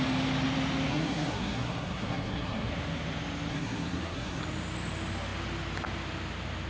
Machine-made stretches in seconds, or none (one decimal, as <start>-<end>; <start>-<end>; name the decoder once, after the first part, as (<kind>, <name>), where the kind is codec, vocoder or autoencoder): 0.9-2.7 (codec, SNAC); 3.5-4.4